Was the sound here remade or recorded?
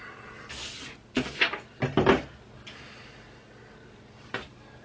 recorded